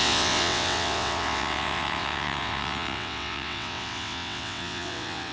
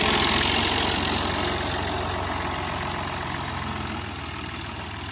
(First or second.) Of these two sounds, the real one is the second